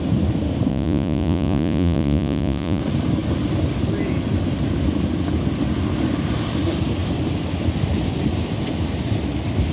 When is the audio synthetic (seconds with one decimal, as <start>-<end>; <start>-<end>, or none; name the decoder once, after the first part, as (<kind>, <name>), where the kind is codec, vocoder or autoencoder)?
0.7-2.8 (vocoder, Vocos)